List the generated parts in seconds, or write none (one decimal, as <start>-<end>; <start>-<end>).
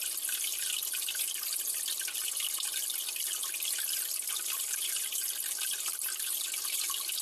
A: none